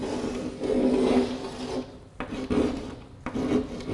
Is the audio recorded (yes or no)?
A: yes